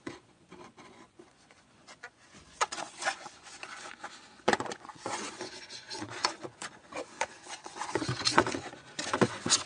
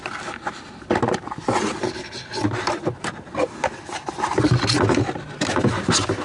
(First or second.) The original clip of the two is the second